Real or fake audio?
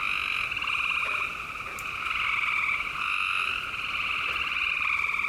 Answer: real